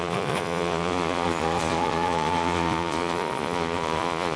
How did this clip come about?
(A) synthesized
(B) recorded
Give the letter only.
A